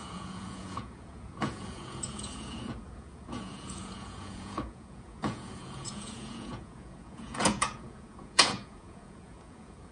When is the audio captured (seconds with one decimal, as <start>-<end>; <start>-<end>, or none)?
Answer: none